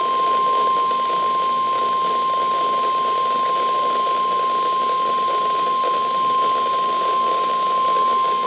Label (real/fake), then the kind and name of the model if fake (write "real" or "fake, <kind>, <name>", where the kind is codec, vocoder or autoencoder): real